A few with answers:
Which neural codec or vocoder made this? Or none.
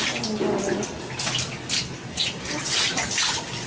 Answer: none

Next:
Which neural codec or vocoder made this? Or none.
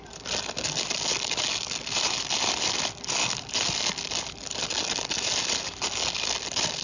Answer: none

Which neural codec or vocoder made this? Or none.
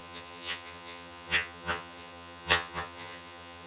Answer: vocoder, HiFi-GAN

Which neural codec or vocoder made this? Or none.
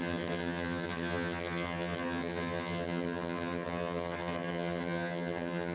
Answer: vocoder, HiFi-GAN